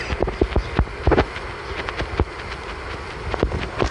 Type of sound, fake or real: real